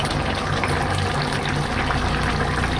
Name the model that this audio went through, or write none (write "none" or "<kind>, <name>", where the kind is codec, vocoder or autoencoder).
none